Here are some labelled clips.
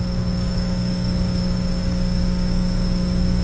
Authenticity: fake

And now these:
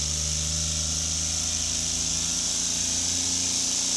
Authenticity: real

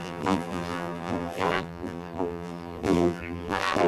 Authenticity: fake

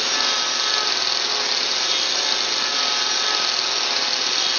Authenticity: real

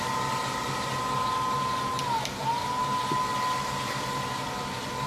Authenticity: real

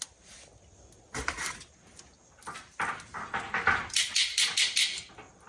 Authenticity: real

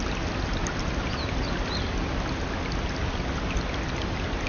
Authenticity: real